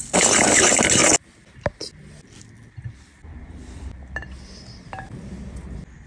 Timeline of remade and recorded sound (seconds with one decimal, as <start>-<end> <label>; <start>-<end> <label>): 0.0-6.1 recorded